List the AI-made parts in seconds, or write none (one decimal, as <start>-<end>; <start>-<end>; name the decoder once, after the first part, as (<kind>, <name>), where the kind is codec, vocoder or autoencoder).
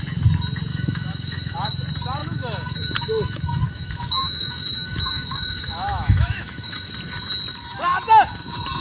0.7-1.7 (autoencoder, DAC-VAE); 2.2-6.9